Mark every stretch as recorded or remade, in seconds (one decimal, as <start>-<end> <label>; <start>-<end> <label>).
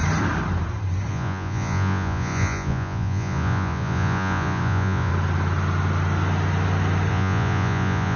0.0-1.1 recorded; 1.1-5.1 remade; 5.1-7.1 recorded; 7.1-8.2 remade